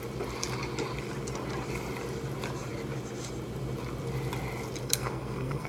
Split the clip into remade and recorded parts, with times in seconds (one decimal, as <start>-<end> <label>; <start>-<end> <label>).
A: 0.0-4.8 recorded; 4.8-5.7 remade